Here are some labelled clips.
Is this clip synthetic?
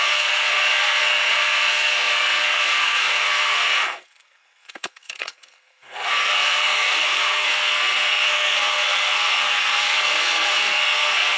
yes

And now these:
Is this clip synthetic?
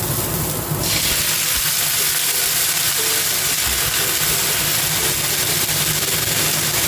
no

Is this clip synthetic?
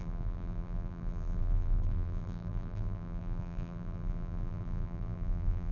yes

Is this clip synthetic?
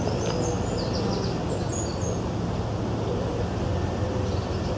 no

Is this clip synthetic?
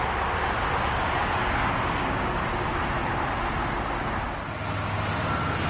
no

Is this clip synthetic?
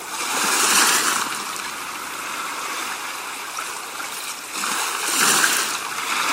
no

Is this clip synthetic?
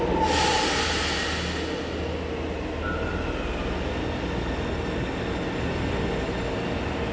no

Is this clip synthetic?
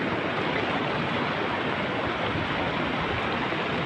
no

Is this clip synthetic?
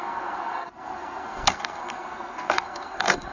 yes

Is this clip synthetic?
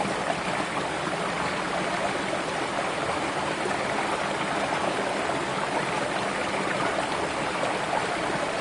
no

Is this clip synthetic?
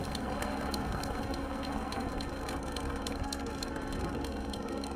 yes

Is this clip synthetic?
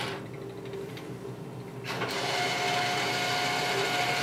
no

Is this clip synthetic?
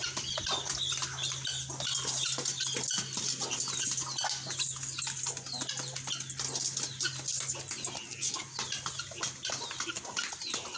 no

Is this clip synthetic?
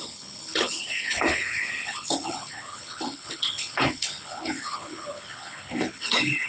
yes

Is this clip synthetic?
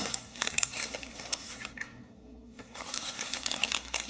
yes